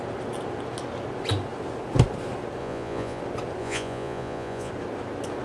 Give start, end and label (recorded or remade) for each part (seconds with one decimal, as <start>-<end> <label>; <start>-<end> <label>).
0.0-2.6 recorded; 2.6-3.2 remade; 3.2-3.6 recorded; 3.6-4.7 remade; 4.7-5.4 recorded